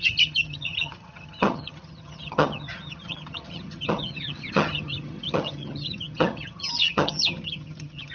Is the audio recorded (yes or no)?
no